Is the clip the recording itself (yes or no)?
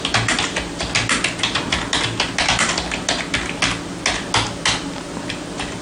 yes